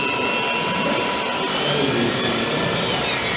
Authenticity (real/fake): real